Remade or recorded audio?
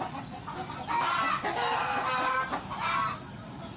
recorded